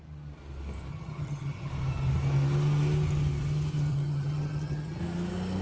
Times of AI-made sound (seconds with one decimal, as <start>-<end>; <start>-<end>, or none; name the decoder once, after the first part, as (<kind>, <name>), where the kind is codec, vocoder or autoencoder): 0.9-1.7 (vocoder, HiFi-GAN); 3.9-5.0